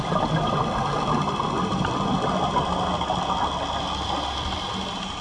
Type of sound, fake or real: real